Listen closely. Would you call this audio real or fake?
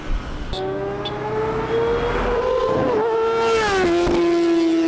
real